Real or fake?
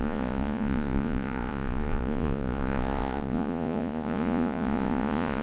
fake